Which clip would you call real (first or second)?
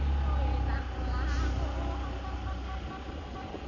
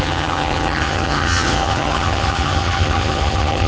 first